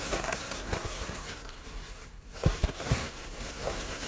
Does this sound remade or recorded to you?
remade